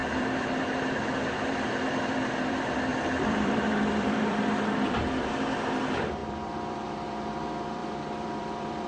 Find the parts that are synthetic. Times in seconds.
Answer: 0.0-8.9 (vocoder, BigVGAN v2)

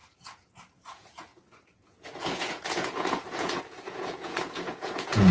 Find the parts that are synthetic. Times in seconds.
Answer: 0.0-5.3 (vocoder, Vocos)

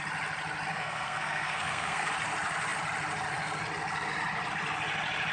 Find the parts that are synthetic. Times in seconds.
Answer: 0.7-2.1 (codec, SNAC)

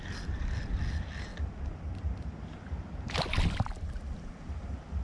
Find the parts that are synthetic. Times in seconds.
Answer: none

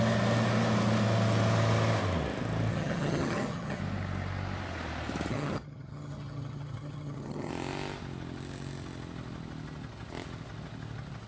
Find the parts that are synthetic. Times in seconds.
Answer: 2.7-3.8 (vocoder, HiFi-GAN); 5.3-7.5

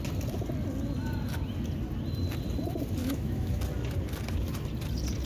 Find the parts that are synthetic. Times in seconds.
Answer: 3.0-3.6 (autoencoder, DAC-VAE)

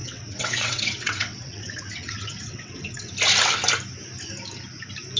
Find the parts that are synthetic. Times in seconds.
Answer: 0.0-3.1 (vocoder, WaveNeXt)

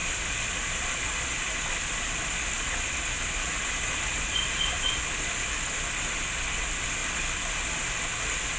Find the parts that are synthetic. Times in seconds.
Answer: 0.0-5.1 (vocoder, BigVGAN v2)